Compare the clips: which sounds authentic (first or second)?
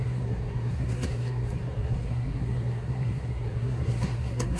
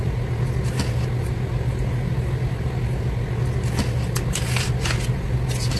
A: second